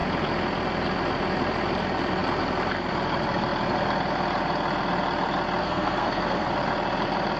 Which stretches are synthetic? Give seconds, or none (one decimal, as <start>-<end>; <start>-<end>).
5.6-6.5